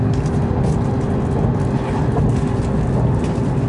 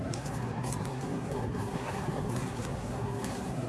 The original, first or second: first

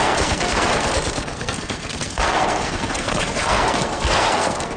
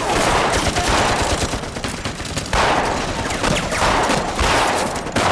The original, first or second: second